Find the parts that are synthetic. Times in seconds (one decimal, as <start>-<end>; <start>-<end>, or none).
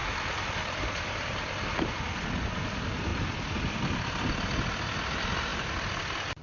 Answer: 0.0-1.6